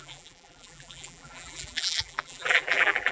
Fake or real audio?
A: fake